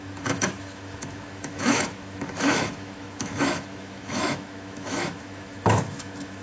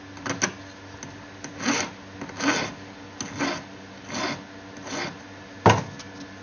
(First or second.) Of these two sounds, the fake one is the first